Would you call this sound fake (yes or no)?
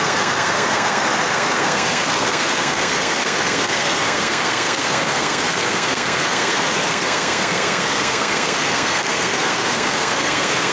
yes